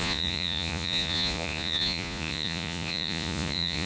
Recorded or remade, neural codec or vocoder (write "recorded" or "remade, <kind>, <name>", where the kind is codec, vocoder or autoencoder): remade, vocoder, Vocos